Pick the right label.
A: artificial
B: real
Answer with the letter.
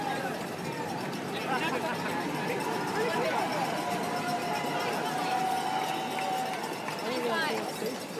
B